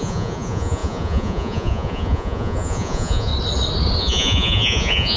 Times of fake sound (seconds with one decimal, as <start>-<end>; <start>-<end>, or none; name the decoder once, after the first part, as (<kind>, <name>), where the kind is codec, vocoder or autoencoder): 0.0-3.3 (vocoder, Vocos); 4.0-5.2